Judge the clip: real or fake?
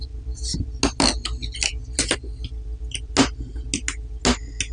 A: real